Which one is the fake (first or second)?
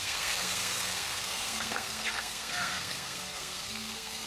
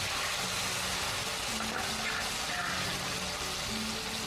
first